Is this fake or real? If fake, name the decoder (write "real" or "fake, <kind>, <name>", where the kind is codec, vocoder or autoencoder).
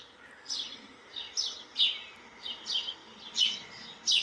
real